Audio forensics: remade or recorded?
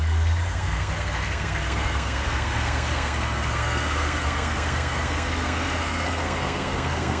remade